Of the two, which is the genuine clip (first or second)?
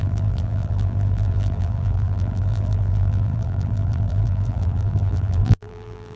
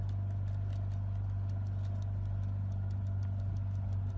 second